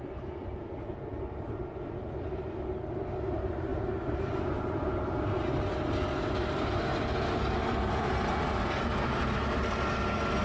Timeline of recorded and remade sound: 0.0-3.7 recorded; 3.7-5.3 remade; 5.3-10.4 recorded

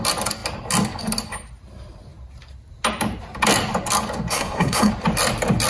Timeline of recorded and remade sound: 0.0-4.3 recorded; 4.3-4.9 remade; 4.9-5.7 recorded